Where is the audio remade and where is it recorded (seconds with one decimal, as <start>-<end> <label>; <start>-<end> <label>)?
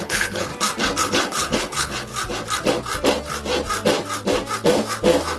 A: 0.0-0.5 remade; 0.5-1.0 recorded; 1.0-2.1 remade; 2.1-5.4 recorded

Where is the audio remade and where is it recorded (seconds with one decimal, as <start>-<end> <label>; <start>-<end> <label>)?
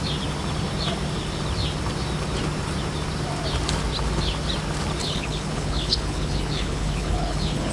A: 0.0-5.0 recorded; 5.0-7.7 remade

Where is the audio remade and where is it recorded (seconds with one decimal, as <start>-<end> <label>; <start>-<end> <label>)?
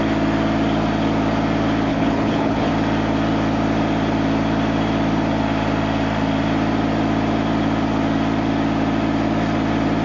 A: 0.0-1.9 recorded; 1.9-2.7 remade; 2.7-10.0 recorded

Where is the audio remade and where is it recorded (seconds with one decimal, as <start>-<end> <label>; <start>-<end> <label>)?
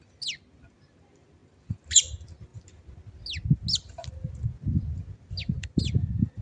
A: 0.0-6.4 recorded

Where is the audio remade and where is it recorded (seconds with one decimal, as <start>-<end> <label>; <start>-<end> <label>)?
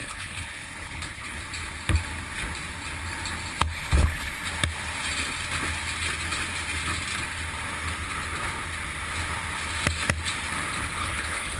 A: 0.0-1.4 remade; 1.4-3.6 recorded; 3.6-4.3 remade; 4.3-11.0 recorded; 11.0-11.6 remade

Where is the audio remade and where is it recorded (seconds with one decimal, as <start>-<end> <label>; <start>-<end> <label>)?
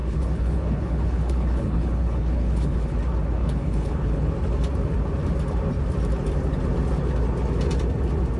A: 0.0-2.9 remade; 2.9-3.4 recorded; 3.4-4.3 remade; 4.3-8.4 recorded